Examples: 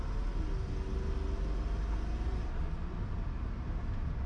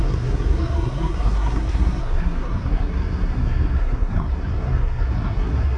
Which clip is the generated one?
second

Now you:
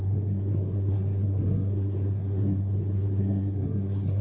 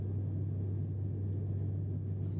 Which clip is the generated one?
first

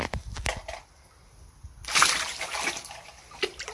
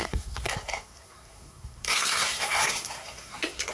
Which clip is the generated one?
second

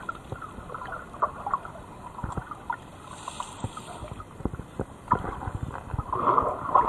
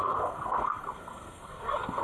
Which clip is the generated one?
second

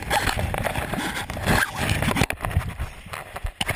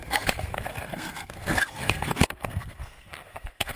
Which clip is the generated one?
second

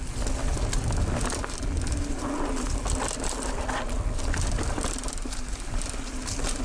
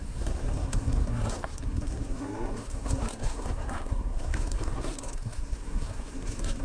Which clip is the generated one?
second